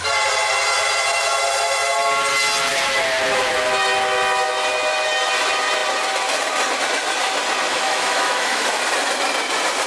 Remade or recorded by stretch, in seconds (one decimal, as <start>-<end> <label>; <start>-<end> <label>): 0.0-7.7 recorded; 7.7-8.8 remade; 8.8-9.9 recorded

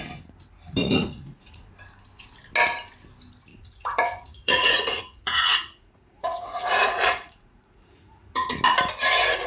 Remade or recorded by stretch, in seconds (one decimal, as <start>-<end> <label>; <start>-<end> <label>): 0.0-0.8 recorded; 0.8-1.6 remade; 1.6-3.5 recorded; 3.5-8.6 remade; 8.6-9.5 recorded

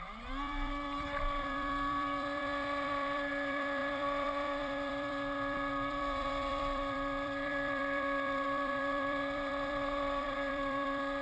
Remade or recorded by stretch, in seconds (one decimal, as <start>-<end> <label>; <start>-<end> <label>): 0.0-11.2 remade